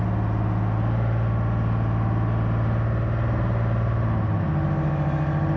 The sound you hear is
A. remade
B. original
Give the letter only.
B